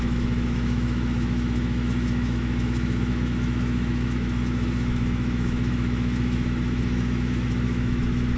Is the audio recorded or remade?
remade